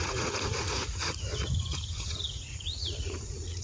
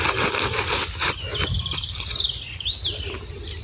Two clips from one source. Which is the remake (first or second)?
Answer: first